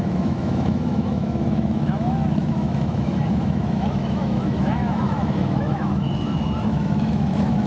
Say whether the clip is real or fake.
fake